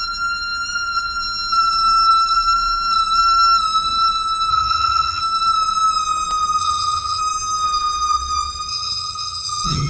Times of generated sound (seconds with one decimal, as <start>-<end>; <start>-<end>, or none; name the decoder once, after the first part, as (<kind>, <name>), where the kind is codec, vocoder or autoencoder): 4.5-5.2 (vocoder, HiFi-GAN); 6.6-7.2; 8.7-9.9